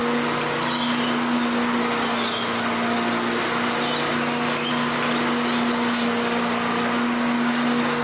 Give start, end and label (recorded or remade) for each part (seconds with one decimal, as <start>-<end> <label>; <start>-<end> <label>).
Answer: 0.0-8.0 recorded